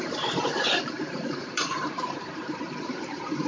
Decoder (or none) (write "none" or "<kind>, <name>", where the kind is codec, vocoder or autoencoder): vocoder, BigVGAN v2